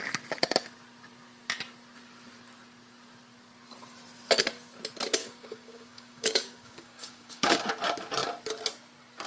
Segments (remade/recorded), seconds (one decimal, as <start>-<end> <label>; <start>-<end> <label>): 0.0-5.2 recorded; 5.2-7.6 remade; 7.6-9.3 recorded